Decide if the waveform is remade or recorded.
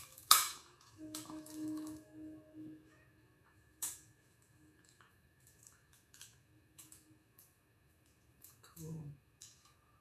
remade